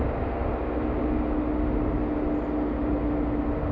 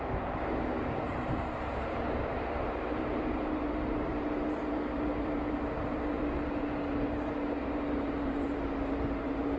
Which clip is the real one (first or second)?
first